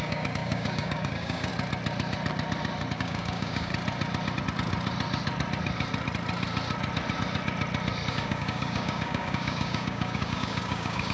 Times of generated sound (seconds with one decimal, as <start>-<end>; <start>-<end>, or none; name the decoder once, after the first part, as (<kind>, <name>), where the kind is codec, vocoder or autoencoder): 0.0-1.5 (codec, DAC); 3.0-3.7; 8.1-11.1